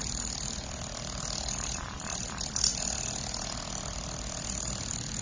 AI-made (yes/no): no